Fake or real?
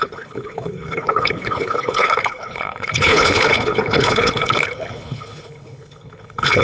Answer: fake